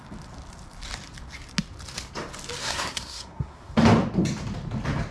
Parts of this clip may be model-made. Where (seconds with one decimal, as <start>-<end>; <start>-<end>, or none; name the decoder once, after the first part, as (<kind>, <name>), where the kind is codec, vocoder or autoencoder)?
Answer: 2.6-3.7 (codec, SNAC)